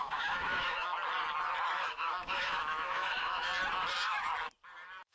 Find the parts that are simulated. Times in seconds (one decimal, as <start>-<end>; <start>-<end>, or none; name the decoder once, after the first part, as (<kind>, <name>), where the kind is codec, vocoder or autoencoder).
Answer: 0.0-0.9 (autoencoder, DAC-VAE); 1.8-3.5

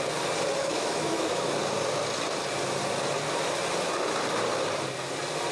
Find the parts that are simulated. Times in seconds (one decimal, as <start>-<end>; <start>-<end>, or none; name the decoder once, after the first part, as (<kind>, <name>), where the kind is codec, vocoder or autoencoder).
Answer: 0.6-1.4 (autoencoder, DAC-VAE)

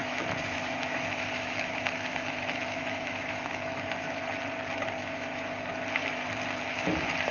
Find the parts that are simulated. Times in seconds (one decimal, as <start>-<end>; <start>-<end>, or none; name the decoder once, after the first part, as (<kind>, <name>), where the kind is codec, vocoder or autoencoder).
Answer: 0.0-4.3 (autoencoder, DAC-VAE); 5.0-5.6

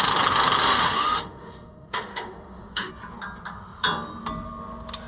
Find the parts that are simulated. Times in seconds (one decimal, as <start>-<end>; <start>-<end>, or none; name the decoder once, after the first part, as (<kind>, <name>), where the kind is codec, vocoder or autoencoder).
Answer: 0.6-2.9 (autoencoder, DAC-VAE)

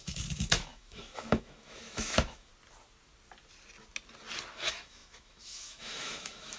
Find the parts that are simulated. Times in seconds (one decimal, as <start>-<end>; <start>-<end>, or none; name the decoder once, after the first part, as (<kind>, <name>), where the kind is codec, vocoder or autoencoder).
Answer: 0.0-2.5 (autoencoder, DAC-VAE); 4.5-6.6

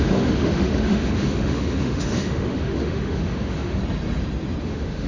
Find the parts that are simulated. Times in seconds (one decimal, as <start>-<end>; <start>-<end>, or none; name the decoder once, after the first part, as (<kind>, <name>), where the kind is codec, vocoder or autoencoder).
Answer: 0.0-3.8 (autoencoder, DAC-VAE); 4.6-5.1